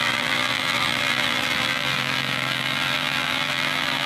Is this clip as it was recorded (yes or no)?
no